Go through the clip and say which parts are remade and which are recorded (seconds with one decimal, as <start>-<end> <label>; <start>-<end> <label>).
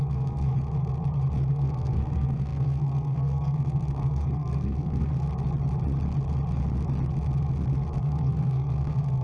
0.0-0.5 remade; 0.5-1.5 recorded; 1.5-5.1 remade; 5.1-8.0 recorded; 8.0-9.2 remade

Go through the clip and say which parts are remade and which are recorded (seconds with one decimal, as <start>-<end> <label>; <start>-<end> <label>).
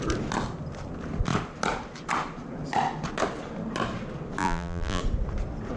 0.0-4.4 recorded; 4.4-5.0 remade; 5.0-5.8 recorded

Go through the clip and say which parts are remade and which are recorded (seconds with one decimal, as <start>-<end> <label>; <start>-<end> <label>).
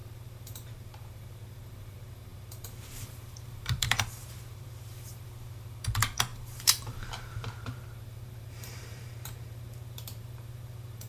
0.0-11.1 remade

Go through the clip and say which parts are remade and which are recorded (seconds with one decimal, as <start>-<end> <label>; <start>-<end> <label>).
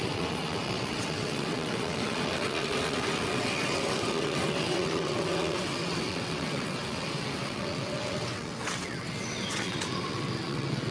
0.0-10.9 remade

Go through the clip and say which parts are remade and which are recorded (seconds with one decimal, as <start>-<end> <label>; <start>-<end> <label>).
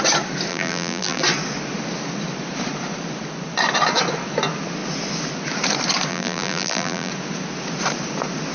0.0-0.5 recorded; 0.5-1.2 remade; 1.2-6.1 recorded; 6.1-7.1 remade; 7.1-8.5 recorded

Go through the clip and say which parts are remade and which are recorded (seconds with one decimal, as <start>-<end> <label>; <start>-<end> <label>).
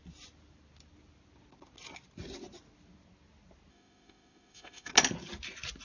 0.0-3.7 recorded; 3.7-4.9 remade; 4.9-5.8 recorded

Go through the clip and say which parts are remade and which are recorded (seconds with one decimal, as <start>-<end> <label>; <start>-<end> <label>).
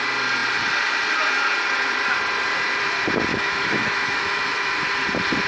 0.0-3.3 recorded; 3.3-4.7 remade; 4.7-5.5 recorded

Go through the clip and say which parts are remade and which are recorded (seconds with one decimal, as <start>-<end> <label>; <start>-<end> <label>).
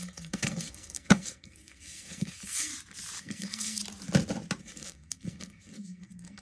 0.0-2.7 remade; 2.7-3.2 recorded; 3.2-3.8 remade; 3.8-4.6 recorded; 4.6-6.4 remade